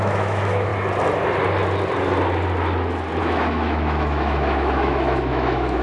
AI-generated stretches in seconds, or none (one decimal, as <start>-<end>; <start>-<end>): 0.0-0.7; 3.2-5.8